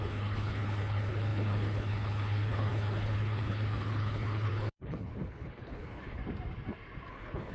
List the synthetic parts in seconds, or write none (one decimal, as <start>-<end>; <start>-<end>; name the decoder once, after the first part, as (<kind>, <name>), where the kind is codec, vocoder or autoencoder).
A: 0.0-6.2 (codec, HILCodec); 7.1-7.5